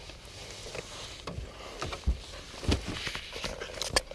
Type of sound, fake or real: real